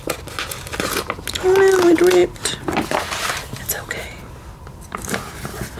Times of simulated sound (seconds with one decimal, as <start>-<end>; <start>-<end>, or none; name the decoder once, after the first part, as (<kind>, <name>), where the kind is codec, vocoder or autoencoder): none

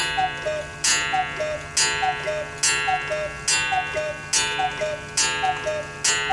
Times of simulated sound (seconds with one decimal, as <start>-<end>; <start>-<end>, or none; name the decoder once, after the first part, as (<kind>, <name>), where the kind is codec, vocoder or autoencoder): none

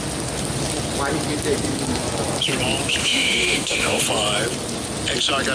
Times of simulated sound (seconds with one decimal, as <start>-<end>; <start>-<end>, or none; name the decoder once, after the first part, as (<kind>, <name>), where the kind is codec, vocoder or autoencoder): 3.0-4.0 (autoencoder, DAC-VAE)

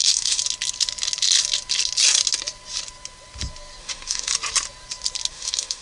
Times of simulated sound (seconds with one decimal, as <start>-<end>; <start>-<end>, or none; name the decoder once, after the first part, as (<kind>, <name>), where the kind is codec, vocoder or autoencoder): 0.0-0.4 (autoencoder, DAC-VAE); 3.8-4.3; 5.3-5.8

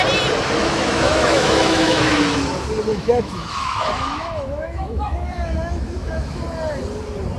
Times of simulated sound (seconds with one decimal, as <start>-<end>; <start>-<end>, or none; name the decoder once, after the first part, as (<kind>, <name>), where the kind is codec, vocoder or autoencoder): 0.6-2.5 (autoencoder, DAC-VAE); 2.9-6.4

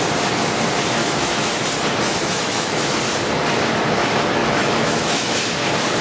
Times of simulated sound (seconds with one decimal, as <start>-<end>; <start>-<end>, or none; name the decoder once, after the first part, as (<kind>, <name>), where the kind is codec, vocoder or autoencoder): 1.0-1.6 (autoencoder, DAC-VAE); 2.1-3.0; 4.4-5.4

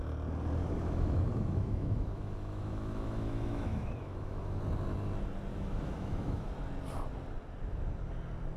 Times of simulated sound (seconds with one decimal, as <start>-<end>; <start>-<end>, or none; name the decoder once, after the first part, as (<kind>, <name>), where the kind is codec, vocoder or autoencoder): 0.6-4.6 (autoencoder, DAC-VAE); 5.5-6.5

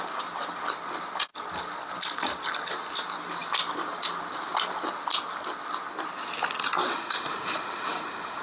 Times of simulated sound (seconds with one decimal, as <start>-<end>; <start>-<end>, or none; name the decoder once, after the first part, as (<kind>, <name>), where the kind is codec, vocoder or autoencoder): 6.9-8.4 (autoencoder, DAC-VAE)